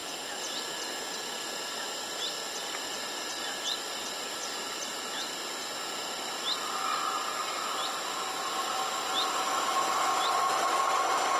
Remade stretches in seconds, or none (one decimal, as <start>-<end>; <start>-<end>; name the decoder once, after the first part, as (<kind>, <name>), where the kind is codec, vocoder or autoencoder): 3.3-4.6 (vocoder, BigVGAN v2)